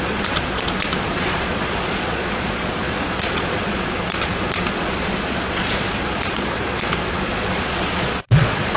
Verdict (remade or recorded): remade